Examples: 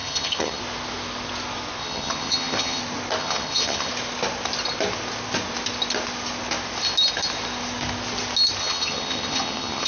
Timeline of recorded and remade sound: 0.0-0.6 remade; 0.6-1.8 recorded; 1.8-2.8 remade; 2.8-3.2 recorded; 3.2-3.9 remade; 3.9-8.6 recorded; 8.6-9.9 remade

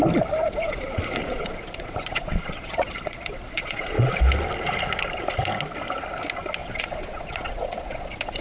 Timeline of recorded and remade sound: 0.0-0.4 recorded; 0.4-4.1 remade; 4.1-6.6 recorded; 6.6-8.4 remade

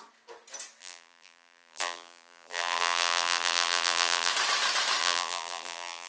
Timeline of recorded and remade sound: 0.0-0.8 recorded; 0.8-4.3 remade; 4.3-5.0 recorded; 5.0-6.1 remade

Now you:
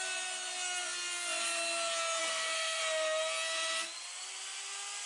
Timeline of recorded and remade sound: 0.0-2.2 recorded; 2.2-2.8 remade; 2.8-5.1 recorded